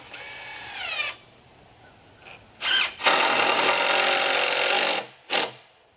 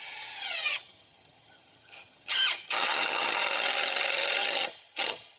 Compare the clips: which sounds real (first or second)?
first